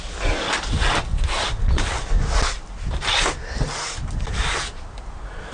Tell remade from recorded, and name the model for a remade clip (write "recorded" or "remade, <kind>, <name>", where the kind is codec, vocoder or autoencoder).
recorded